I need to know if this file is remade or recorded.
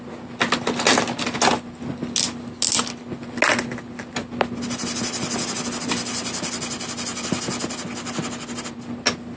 recorded